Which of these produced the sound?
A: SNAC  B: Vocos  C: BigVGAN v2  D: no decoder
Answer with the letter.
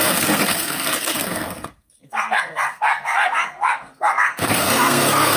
A